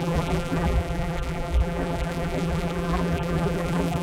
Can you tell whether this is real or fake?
fake